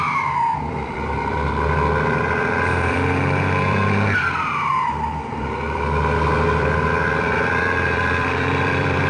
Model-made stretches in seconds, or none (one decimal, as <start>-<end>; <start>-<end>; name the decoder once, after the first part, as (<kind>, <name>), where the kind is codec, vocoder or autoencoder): 0.0-4.7 (vocoder, BigVGAN v2); 5.3-9.1